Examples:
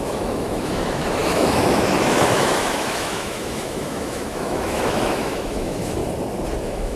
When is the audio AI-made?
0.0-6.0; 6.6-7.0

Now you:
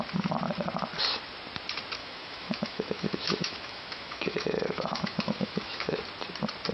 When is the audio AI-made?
2.0-6.0

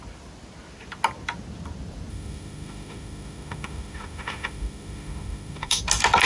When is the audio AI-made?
2.1-5.8

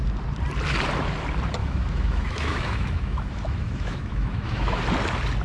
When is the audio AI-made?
1.6-4.8

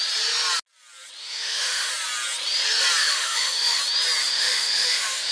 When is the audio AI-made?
1.2-1.9; 3.0-3.8; 4.2-5.3